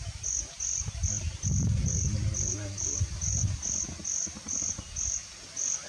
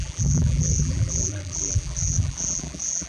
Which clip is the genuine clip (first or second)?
first